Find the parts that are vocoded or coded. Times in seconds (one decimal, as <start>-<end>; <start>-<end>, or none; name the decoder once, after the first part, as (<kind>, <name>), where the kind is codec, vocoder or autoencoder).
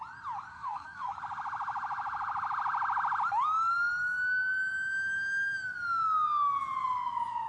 0.5-1.1 (codec, SNAC)